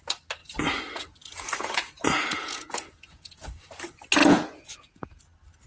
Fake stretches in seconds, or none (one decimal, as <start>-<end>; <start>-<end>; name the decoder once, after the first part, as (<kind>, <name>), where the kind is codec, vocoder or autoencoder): 0.4-3.8 (vocoder, Vocos); 4.2-5.2